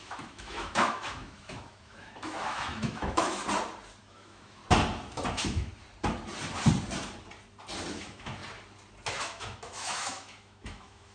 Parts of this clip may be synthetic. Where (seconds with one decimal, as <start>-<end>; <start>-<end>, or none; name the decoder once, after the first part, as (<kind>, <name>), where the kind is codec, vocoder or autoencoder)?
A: 0.0-3.4 (autoencoder, DAC-VAE); 4.0-4.6; 5.3-5.7; 7.9-8.4; 9.2-11.1